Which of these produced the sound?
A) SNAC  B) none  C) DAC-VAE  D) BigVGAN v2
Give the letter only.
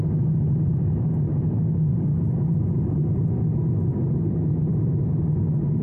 B